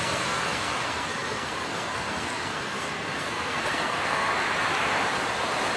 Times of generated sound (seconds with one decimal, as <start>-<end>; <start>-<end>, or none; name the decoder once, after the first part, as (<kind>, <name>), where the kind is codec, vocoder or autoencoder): 0.0-4.3 (codec, SNAC)